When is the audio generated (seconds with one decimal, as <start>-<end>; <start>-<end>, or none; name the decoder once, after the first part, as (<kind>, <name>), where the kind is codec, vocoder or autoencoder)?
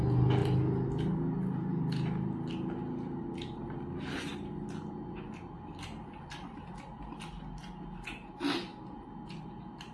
none